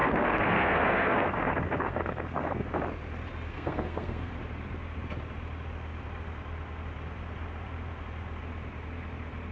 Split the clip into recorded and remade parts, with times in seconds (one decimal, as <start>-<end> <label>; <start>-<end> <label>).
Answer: 0.0-2.8 remade; 2.8-3.5 recorded; 3.5-4.3 remade; 4.3-9.5 recorded